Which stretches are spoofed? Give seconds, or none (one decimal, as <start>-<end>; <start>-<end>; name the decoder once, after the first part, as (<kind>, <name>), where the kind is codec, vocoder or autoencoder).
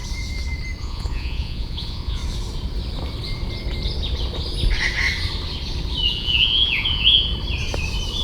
0.8-2.2 (vocoder, Vocos); 6.1-7.3